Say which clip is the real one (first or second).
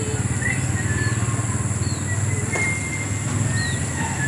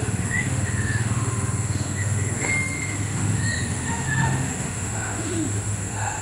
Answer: first